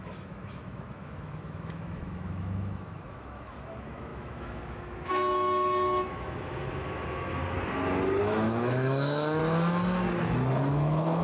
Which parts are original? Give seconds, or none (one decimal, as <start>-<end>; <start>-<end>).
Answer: 7.4-8.2; 9.4-10.2